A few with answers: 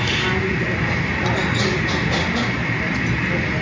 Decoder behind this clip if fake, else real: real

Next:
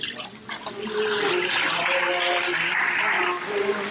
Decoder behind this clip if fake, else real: real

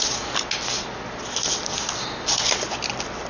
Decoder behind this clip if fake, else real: real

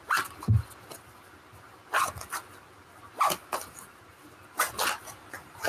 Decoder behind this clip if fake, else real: real